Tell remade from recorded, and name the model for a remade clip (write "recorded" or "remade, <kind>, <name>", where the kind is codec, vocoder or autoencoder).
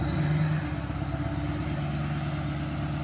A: recorded